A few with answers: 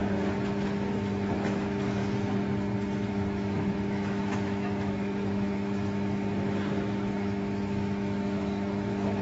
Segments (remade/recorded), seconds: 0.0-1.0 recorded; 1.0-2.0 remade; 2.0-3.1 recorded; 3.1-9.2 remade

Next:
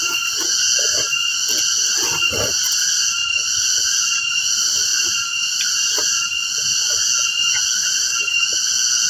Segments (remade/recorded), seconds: 0.0-9.1 recorded

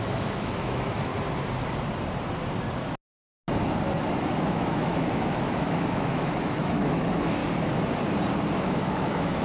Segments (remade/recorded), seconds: 0.0-1.1 remade; 1.1-4.4 recorded; 4.4-7.4 remade; 7.4-8.6 recorded; 8.6-9.4 remade

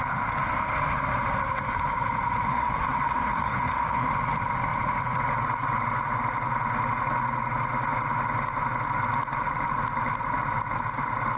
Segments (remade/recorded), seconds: 0.0-2.5 recorded; 2.5-4.1 remade; 4.1-11.4 recorded

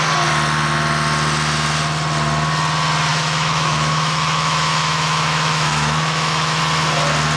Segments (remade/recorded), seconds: 0.0-3.1 recorded; 3.1-6.6 remade; 6.6-7.4 recorded

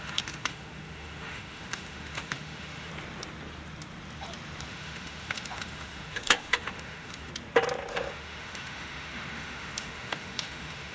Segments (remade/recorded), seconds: 0.0-2.9 remade; 2.9-4.7 recorded; 4.7-7.3 remade; 7.3-7.9 recorded; 7.9-10.9 remade